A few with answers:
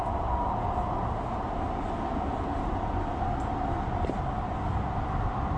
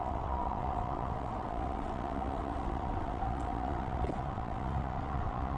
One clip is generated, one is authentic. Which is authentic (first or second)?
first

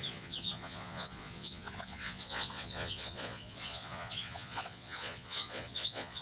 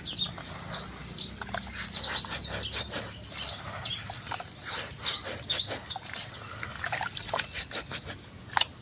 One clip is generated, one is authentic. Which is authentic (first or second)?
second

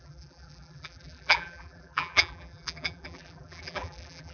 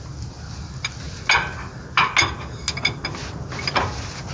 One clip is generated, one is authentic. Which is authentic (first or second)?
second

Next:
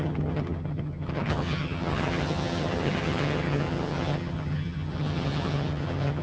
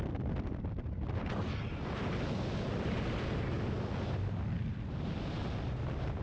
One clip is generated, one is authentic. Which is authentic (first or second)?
second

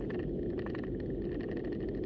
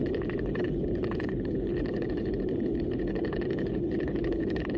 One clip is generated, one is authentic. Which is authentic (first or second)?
first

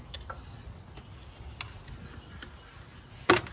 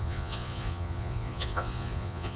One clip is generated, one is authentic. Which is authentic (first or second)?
first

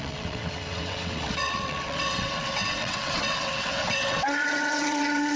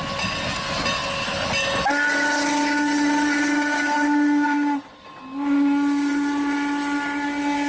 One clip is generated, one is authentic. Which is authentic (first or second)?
second